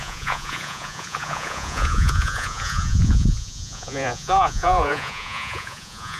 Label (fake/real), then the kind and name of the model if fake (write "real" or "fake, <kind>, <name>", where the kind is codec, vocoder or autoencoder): fake, vocoder, Vocos